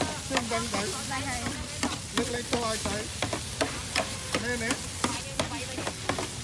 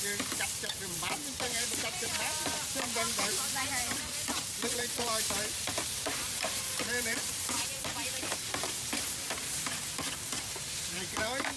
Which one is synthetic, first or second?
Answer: second